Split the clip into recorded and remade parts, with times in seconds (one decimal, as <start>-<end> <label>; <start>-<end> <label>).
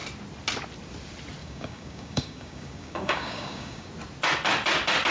0.0-1.4 recorded; 1.4-3.9 remade; 3.9-5.1 recorded